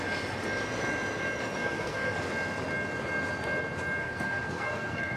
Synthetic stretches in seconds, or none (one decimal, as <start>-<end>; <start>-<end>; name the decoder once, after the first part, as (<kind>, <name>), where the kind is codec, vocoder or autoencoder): 1.6-2.2 (codec, SNAC); 4.0-5.2